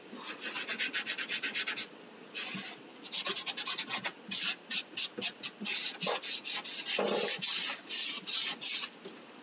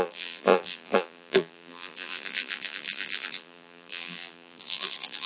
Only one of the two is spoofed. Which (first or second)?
second